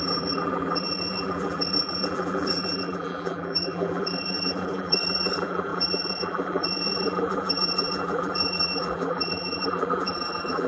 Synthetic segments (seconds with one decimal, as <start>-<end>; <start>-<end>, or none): 0.0-10.7